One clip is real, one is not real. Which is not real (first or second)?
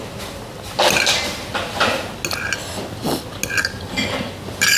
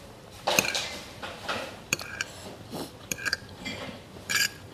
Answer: second